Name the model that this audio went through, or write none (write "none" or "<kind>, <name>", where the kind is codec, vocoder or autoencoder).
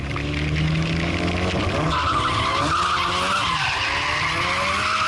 none